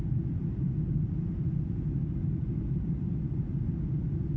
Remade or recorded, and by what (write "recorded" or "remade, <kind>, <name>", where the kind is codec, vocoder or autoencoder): recorded